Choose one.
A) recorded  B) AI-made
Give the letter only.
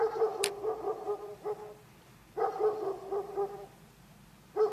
A